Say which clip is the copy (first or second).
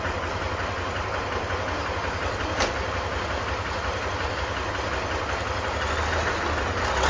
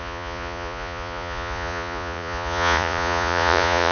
second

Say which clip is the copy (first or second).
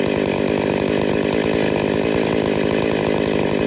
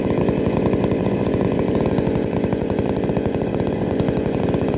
second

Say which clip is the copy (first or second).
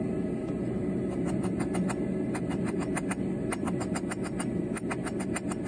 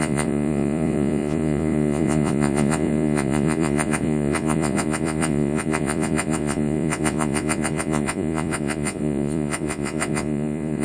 second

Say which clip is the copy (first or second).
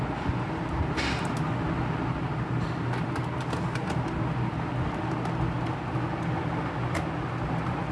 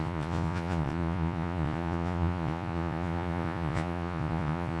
second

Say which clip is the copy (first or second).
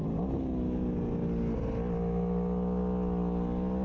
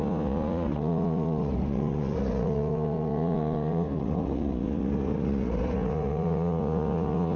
second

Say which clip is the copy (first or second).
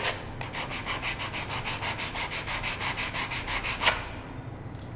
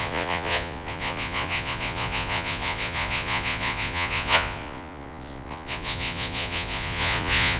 second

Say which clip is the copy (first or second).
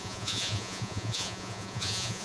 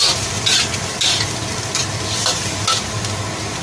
first